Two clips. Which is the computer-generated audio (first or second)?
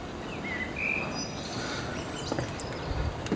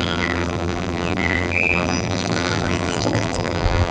second